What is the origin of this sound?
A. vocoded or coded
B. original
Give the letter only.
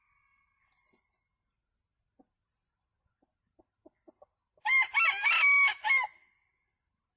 B